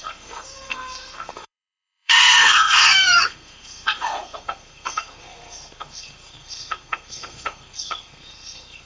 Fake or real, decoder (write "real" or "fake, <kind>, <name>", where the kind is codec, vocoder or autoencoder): fake, codec, SNAC